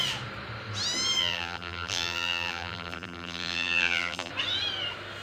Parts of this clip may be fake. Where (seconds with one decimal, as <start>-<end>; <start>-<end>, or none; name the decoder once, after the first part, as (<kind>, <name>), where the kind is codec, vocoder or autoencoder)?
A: 1.2-4.3 (vocoder, BigVGAN v2)

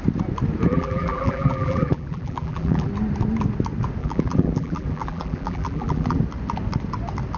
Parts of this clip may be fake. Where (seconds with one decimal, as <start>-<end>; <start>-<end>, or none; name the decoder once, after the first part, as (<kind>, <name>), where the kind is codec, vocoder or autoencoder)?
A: 0.7-2.9 (vocoder, BigVGAN v2); 4.0-6.2

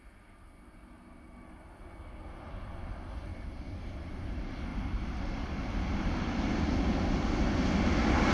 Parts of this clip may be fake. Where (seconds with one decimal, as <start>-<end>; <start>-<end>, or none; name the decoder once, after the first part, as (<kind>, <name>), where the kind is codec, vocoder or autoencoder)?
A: 3.3-3.8 (vocoder, BigVGAN v2); 4.7-6.7

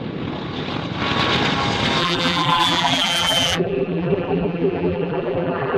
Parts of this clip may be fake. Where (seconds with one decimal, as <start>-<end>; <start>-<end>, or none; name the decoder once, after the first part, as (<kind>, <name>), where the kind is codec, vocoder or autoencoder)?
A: 2.0-5.8 (vocoder, BigVGAN v2)

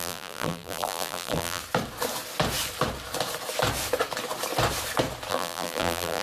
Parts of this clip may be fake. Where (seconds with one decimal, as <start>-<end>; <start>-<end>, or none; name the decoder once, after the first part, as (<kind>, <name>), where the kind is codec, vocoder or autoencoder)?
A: 0.0-1.6 (vocoder, BigVGAN v2); 5.3-6.2